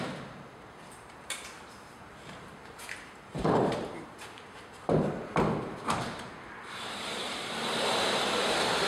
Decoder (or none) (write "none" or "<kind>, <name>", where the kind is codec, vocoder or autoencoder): vocoder, BigVGAN v2